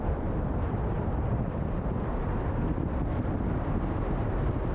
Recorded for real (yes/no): yes